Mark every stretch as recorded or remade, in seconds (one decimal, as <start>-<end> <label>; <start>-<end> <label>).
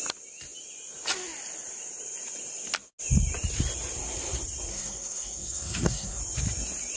0.0-4.7 recorded; 4.7-6.2 remade; 6.2-7.0 recorded